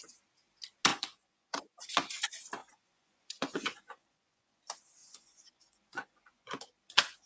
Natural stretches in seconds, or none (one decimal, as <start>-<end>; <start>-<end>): 0.0-0.9; 1.8-2.6; 4.6-5.0; 6.5-7.3